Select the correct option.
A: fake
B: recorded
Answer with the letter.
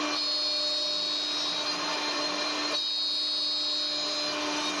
B